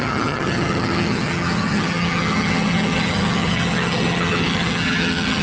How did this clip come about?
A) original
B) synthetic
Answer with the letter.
B